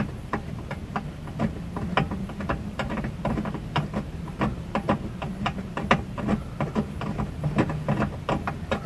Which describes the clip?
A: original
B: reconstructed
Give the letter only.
B